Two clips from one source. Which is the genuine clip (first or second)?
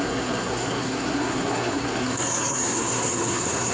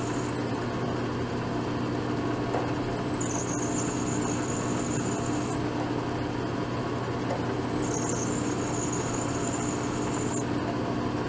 second